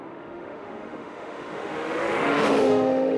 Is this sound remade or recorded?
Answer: remade